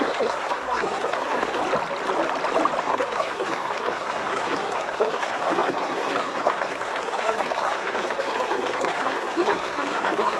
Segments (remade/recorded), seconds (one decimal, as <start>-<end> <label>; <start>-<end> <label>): 0.0-1.6 remade; 1.6-2.8 recorded; 2.8-10.4 remade